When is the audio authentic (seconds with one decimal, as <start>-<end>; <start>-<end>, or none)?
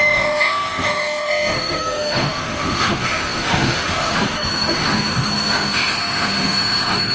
none